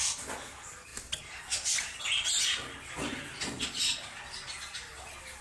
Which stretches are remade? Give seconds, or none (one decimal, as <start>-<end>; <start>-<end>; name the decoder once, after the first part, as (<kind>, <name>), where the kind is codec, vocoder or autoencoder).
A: none